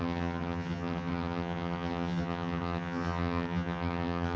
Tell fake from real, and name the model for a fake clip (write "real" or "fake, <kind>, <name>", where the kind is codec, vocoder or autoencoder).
fake, vocoder, HiFi-GAN